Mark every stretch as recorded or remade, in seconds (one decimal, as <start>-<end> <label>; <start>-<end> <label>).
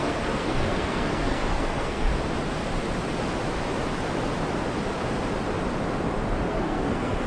0.0-2.1 remade; 2.1-6.5 recorded; 6.5-7.3 remade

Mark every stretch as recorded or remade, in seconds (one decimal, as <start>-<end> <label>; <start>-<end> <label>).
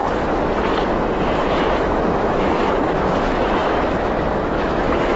0.0-0.9 recorded; 0.9-5.2 remade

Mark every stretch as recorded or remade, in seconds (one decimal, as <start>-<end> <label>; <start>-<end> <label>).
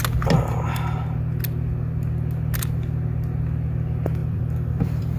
0.0-4.2 recorded; 4.2-5.2 remade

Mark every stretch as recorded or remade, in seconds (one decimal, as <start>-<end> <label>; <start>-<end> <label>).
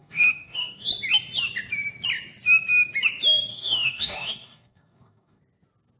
0.0-0.9 remade; 0.9-3.5 recorded; 3.5-5.4 remade; 5.4-6.0 recorded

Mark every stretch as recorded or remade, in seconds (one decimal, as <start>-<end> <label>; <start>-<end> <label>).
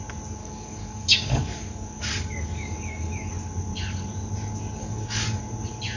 0.0-0.4 recorded; 0.4-3.3 remade; 3.3-4.8 recorded; 4.8-5.4 remade; 5.4-6.0 recorded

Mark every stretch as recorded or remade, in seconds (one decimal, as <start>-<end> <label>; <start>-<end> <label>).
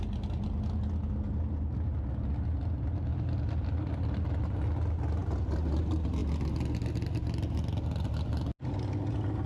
0.0-3.1 recorded; 3.1-3.9 remade; 3.9-5.2 recorded; 5.2-5.8 remade; 5.8-9.5 recorded